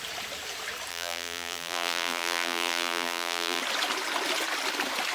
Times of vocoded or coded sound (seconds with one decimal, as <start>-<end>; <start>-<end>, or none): 0.9-3.6